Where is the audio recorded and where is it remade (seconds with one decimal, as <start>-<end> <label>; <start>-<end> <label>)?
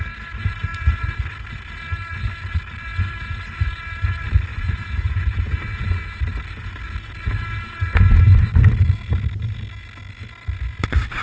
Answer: 0.0-4.5 recorded; 4.5-6.2 remade; 6.2-11.2 recorded